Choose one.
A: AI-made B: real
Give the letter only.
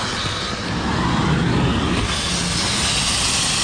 B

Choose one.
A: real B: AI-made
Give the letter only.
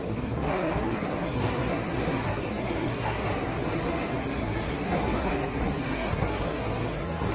B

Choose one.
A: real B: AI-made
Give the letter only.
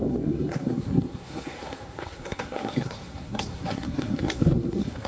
B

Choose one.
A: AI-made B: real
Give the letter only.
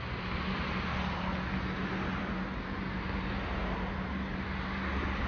B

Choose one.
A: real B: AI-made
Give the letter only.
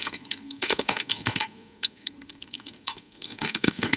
B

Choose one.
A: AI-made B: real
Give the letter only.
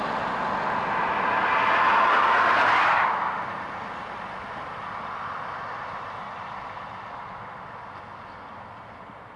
B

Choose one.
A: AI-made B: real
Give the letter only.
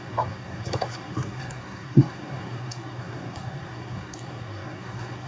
A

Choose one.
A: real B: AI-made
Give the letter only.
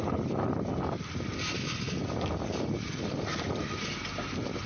A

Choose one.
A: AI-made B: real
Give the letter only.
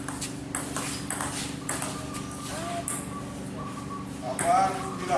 B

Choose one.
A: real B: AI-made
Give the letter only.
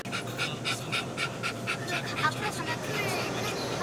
A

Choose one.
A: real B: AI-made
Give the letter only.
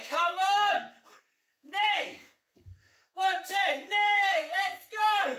B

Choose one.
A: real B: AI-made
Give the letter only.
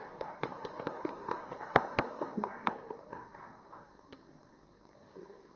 B